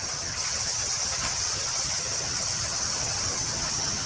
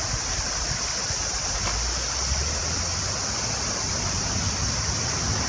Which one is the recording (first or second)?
second